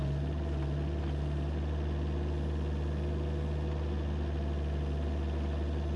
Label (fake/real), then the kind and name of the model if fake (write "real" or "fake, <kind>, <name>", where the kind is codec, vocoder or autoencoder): real